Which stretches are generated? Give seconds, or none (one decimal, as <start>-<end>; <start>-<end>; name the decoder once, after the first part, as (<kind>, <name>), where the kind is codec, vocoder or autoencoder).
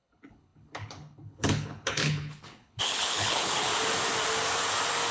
0.0-3.7 (codec, HILCodec)